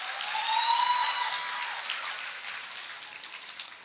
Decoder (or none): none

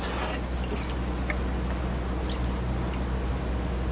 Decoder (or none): none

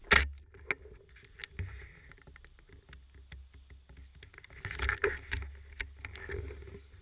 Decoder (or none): none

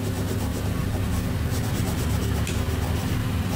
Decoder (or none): none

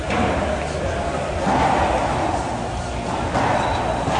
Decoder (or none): none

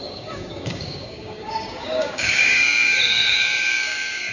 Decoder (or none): codec, DAC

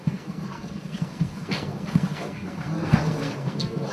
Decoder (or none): codec, SNAC